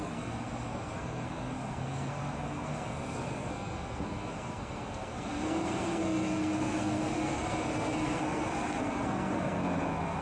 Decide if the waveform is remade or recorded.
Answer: remade